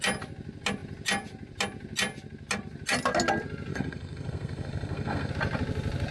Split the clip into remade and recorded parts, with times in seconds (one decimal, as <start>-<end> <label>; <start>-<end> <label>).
0.0-3.7 recorded; 3.7-5.3 remade; 5.3-6.1 recorded